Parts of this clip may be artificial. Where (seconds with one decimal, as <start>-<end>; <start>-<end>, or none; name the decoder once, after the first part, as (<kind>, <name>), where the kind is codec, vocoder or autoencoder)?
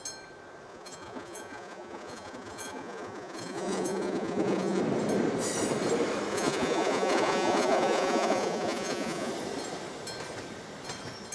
0.7-4.8 (vocoder, Vocos); 6.3-9.3